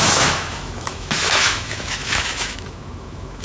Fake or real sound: fake